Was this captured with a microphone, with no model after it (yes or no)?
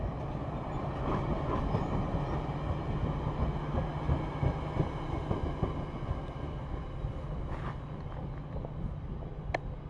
yes